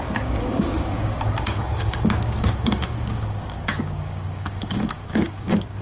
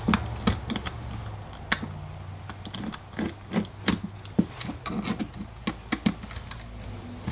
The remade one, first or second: first